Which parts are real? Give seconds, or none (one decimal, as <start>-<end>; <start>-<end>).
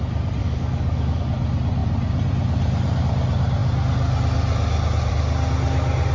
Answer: 0.0-0.4; 1.2-6.1